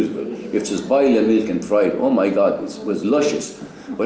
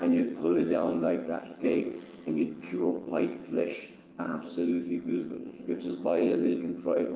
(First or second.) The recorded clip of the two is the first